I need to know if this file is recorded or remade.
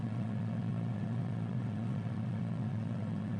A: remade